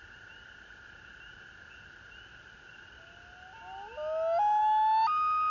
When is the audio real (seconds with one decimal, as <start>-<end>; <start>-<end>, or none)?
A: 0.0-5.5